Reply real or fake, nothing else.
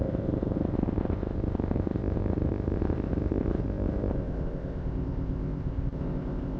fake